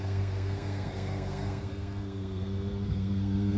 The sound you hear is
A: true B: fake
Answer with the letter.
B